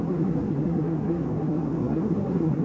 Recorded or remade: remade